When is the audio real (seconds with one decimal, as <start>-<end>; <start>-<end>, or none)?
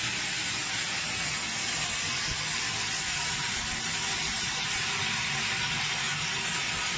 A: 0.0-4.2; 5.0-7.0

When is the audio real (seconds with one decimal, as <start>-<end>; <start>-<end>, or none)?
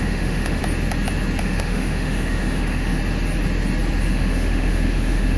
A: 0.6-1.4; 3.0-4.1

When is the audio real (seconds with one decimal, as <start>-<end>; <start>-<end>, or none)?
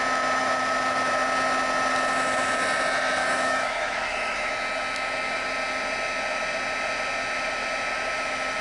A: 0.0-0.4; 1.1-3.2; 4.5-8.6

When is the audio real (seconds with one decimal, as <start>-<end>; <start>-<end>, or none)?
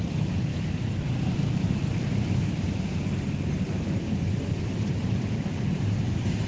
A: 0.0-6.5